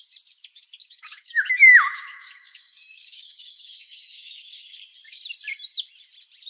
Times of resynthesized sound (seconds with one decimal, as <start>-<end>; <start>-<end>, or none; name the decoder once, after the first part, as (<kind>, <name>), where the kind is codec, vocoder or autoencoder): 0.8-4.7 (autoencoder, DAC-VAE)